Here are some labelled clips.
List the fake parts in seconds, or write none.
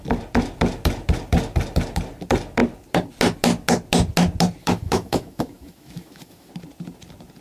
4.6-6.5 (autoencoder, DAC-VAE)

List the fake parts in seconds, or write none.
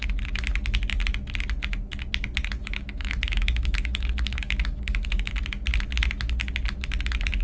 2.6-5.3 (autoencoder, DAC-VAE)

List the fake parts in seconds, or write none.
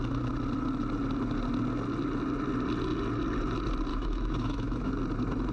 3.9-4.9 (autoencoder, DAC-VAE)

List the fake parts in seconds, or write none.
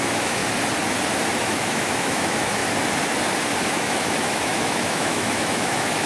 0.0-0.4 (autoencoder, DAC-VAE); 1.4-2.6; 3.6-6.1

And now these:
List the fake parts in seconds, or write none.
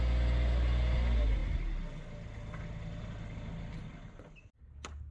none